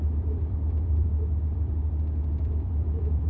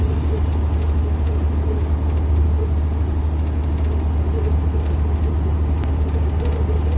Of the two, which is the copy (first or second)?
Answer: first